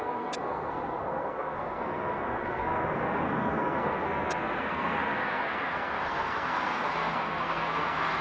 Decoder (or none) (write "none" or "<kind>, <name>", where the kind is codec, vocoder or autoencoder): codec, SNAC